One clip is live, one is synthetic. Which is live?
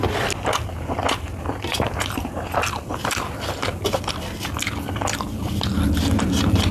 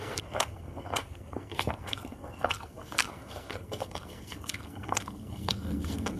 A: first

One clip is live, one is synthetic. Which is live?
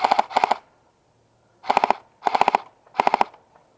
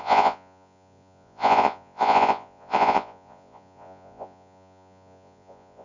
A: first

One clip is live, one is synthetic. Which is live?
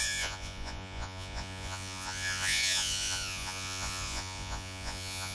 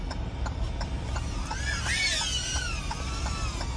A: second